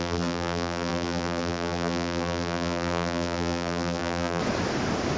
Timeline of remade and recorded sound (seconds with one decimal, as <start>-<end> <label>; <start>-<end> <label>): 0.0-4.4 remade; 4.4-5.2 recorded